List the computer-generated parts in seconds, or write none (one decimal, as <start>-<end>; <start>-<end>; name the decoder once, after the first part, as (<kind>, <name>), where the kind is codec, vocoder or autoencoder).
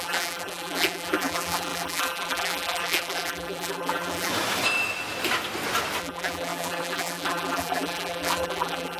0.0-4.3 (vocoder, BigVGAN v2); 6.0-9.0